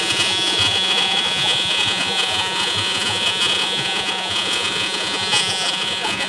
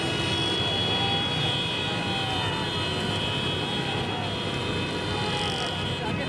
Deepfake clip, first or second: first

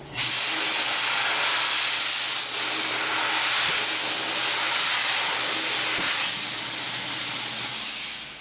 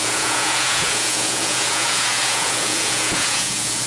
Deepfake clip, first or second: second